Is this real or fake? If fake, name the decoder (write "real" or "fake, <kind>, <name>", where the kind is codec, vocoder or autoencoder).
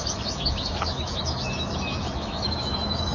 fake, autoencoder, DAC-VAE